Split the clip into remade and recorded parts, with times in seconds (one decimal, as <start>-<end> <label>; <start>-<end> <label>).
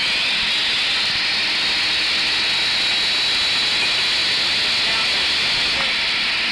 0.0-6.5 recorded